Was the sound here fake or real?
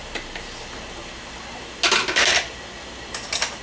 real